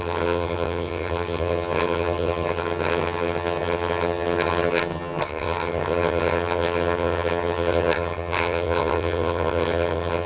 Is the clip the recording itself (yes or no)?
no